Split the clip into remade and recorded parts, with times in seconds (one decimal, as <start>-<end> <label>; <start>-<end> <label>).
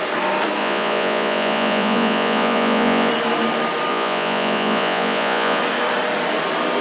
0.0-0.6 recorded; 0.6-3.1 remade; 3.1-3.9 recorded; 3.9-5.6 remade; 5.6-6.8 recorded